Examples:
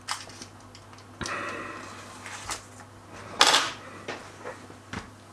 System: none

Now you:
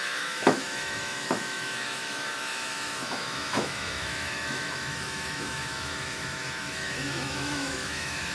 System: autoencoder, DAC-VAE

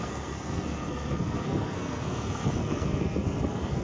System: codec, SNAC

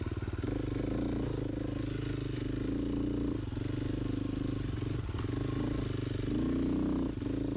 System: none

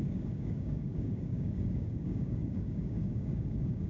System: codec, DAC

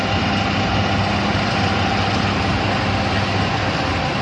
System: none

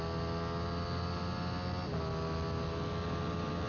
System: none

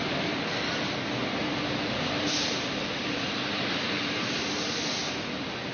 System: vocoder, BigVGAN v2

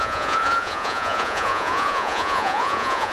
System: vocoder, Vocos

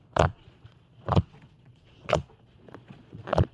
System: vocoder, Vocos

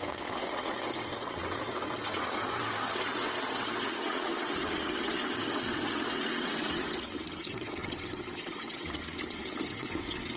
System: vocoder, WaveNeXt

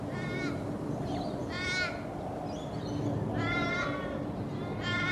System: none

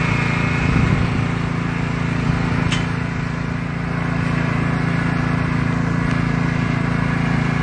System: none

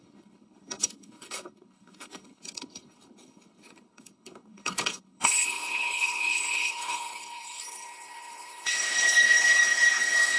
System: codec, HILCodec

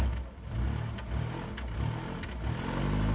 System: none